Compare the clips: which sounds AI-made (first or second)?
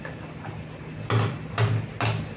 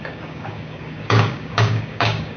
second